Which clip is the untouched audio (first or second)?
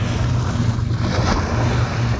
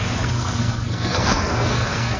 first